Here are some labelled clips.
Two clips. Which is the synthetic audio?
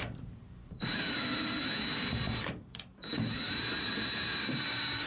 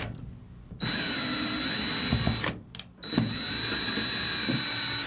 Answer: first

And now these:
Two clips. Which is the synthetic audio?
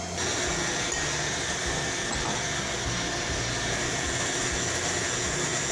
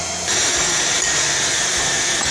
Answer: second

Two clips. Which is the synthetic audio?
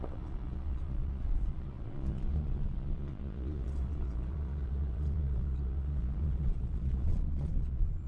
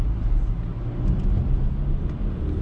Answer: first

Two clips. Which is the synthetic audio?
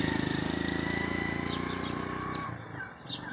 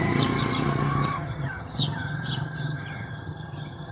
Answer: second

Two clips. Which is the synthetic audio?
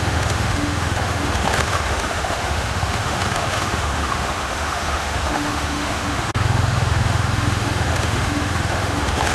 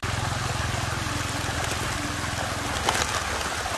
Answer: first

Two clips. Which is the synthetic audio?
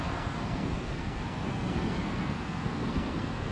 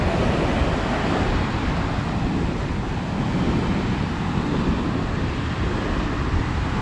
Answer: first